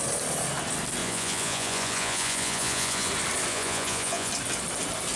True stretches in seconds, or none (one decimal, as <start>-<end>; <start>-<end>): 0.0-1.0; 3.1-3.5; 4.3-5.2